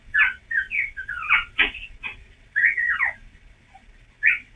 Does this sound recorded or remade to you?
remade